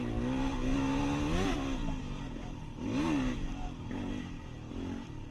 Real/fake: real